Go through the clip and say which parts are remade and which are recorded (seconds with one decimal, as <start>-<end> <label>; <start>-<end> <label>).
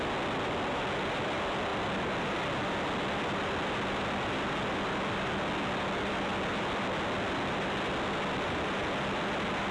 0.0-9.7 recorded